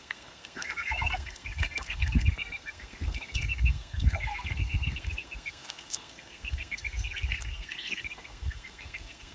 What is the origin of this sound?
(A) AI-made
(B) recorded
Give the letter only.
A